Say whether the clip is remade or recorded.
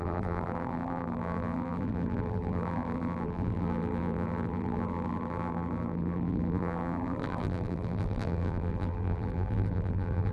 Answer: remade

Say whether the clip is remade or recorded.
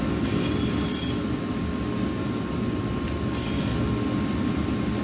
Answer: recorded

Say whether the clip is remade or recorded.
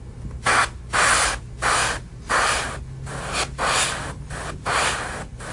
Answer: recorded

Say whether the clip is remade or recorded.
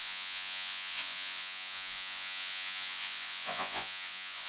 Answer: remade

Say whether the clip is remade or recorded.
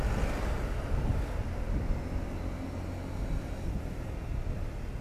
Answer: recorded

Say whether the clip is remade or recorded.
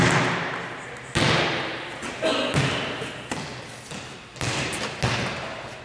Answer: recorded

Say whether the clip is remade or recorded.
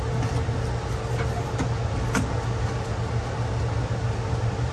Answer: recorded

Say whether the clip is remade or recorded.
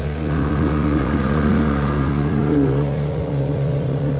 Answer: remade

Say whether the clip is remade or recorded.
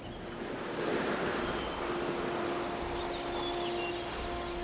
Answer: recorded